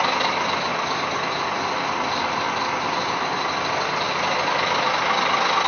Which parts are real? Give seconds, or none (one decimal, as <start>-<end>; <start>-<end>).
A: 0.0-5.7